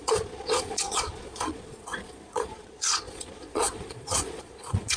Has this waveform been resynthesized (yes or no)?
yes